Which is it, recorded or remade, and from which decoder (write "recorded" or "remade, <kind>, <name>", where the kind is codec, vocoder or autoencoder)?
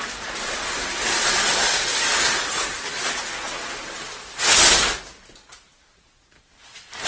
recorded